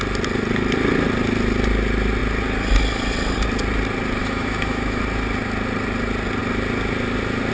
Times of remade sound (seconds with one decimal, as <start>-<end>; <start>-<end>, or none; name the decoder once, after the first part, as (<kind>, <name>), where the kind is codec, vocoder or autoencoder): 4.2-5.0 (autoencoder, DAC-VAE)